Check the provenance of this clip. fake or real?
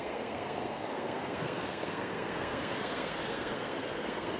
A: fake